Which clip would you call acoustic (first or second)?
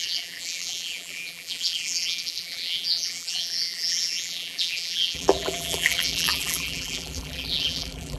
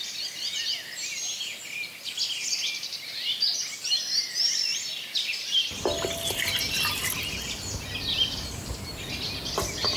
second